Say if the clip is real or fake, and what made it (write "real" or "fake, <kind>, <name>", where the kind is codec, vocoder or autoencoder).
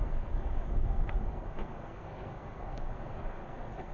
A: fake, codec, SNAC